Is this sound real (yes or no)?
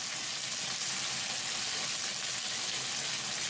yes